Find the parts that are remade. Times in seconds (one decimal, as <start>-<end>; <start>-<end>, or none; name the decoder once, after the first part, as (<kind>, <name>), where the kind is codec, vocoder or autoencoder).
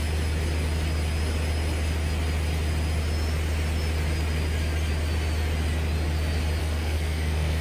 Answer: 6.6-7.6 (codec, SNAC)